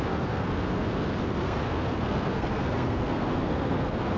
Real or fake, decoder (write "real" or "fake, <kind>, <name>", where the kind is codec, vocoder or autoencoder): fake, codec, SNAC